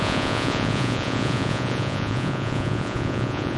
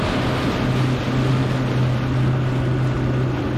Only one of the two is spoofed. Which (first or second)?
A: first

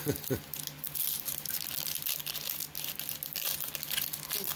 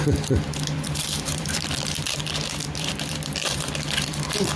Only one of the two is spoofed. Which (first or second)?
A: second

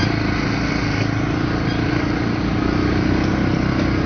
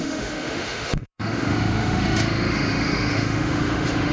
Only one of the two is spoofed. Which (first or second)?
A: second